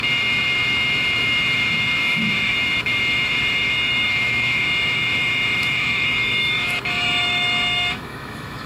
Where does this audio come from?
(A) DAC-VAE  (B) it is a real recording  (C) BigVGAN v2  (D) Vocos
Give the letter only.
A